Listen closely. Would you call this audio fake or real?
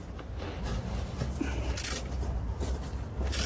real